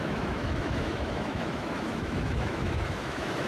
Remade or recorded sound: remade